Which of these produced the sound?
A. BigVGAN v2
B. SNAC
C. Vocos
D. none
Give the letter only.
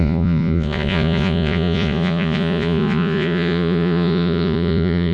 C